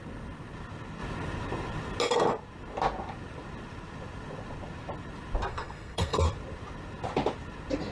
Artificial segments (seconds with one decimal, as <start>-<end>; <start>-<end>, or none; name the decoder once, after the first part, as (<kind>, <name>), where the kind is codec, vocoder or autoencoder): 5.5-6.2 (codec, SNAC)